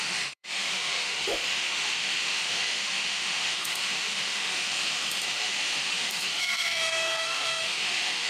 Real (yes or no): no